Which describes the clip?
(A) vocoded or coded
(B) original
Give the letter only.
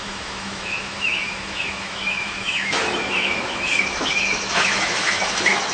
A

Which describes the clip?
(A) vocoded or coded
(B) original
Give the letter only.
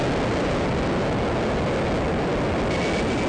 B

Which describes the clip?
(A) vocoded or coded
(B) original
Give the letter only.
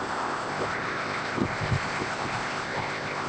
A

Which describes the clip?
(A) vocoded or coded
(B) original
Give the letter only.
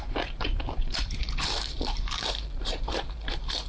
A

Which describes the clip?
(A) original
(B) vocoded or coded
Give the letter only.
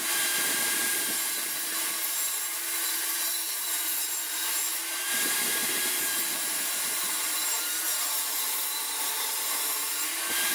B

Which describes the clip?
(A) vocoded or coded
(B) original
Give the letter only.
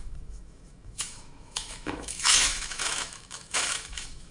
A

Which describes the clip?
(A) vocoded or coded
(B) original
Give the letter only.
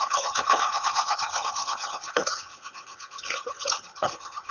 A